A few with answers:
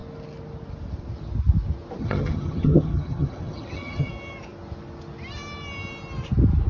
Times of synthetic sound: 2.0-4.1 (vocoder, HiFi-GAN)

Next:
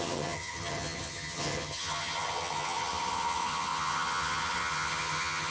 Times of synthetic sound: 0.0-5.5 (vocoder, HiFi-GAN)

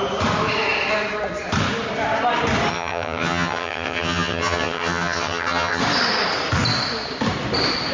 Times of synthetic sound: 2.7-5.8 (vocoder, HiFi-GAN)

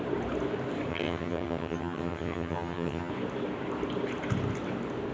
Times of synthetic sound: 0.9-3.1 (vocoder, HiFi-GAN)

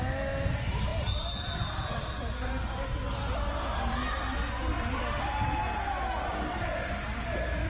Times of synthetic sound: none